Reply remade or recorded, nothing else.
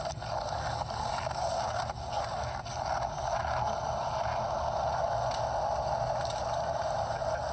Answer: recorded